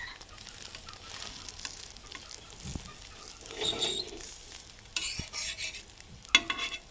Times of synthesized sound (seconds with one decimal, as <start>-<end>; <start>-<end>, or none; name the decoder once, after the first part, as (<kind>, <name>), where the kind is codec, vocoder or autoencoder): none